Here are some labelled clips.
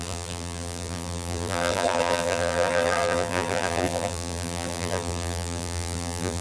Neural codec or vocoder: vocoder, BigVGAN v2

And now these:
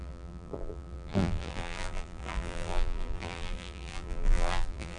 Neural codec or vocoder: vocoder, BigVGAN v2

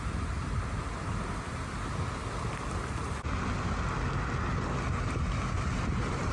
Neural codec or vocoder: none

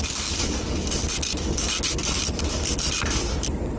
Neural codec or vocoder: none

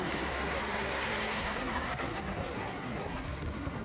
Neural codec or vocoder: codec, SNAC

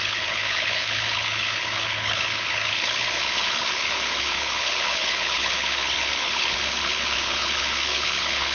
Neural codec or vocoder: codec, HILCodec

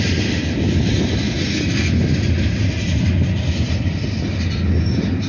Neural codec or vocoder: none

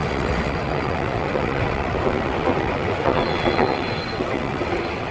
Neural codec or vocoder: vocoder, WaveNeXt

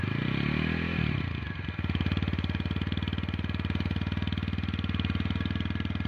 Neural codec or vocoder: none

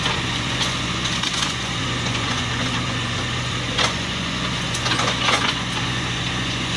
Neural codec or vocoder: vocoder, Vocos